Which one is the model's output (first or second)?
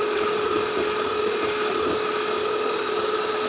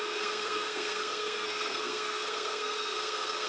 second